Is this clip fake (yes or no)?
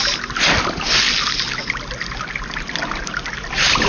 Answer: no